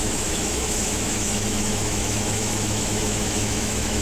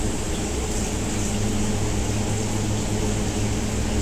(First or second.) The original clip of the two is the second